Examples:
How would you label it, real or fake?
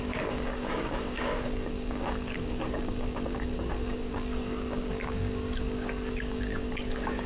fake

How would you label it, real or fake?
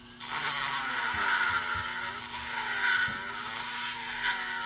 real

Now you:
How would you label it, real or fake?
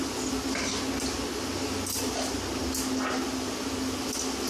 real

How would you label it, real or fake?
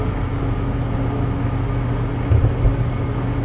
real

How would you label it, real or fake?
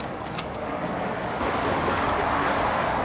fake